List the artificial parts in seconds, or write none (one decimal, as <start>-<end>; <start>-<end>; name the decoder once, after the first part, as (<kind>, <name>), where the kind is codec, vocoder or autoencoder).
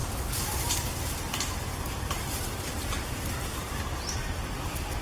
none